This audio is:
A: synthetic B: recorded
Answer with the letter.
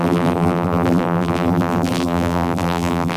A